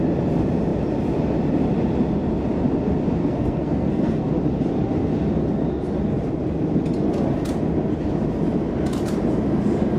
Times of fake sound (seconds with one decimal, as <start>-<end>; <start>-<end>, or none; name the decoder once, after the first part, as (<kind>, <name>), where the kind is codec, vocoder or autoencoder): 3.2-4.3 (codec, SNAC)